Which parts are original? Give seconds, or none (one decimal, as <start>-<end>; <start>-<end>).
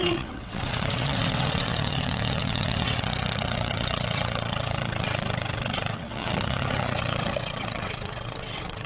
none